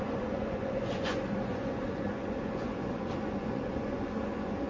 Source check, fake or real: fake